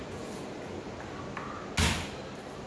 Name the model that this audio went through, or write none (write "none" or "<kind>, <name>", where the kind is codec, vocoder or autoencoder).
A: none